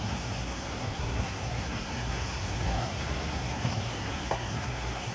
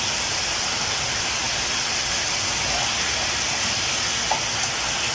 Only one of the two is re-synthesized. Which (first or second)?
first